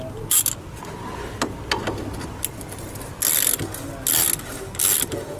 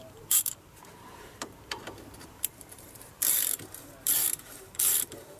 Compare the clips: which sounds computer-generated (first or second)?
second